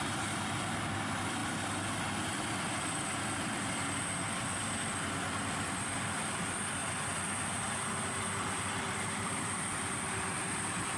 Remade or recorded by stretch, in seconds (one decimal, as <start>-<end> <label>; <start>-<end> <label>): 0.0-1.4 remade; 1.4-2.4 recorded; 2.4-6.8 remade; 6.8-8.5 recorded; 8.5-11.0 remade